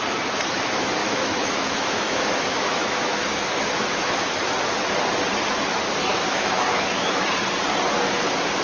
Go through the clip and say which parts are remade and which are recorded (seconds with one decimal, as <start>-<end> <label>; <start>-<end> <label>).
0.0-1.0 recorded; 1.0-4.4 remade; 4.4-6.1 recorded; 6.1-7.3 remade; 7.3-8.6 recorded